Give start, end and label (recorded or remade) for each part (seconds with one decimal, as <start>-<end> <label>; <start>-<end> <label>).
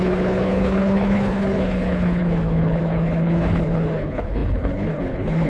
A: 0.0-5.5 remade